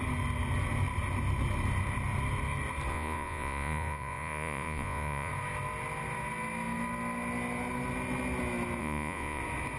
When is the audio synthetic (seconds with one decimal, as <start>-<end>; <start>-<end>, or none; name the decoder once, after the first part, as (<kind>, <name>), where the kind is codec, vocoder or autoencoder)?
2.9-5.3 (vocoder, Vocos); 8.8-9.4